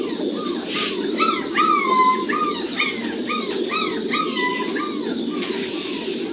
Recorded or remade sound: recorded